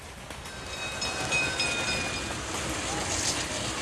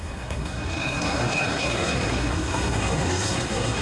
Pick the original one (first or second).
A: first